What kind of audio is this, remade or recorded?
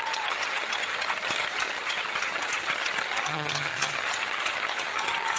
remade